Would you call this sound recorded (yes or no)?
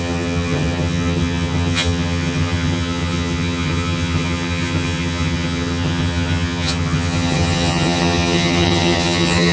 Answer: no